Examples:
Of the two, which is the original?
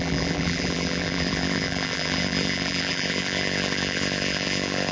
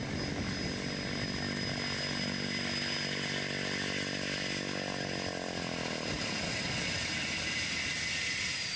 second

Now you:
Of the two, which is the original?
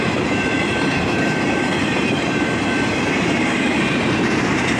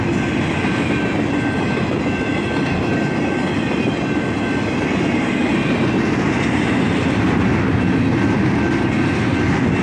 second